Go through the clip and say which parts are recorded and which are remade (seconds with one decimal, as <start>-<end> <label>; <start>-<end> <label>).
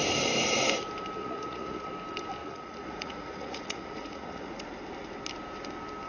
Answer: 0.0-1.2 recorded; 1.2-1.9 remade; 1.9-2.4 recorded; 2.4-4.6 remade; 4.6-6.1 recorded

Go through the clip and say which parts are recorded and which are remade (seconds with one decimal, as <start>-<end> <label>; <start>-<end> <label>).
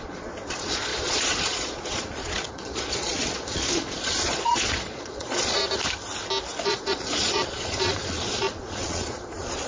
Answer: 0.0-5.6 remade; 5.6-6.6 recorded; 6.6-9.7 remade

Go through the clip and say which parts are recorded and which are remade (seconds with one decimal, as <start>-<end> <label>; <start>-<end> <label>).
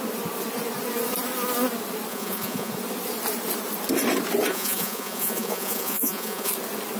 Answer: 0.0-2.1 recorded; 2.1-2.7 remade; 2.7-4.5 recorded; 4.5-6.5 remade; 6.5-7.0 recorded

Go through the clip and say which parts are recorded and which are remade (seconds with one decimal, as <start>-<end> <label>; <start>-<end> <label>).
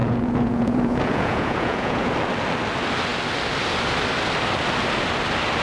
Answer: 0.0-2.1 remade; 2.1-5.6 recorded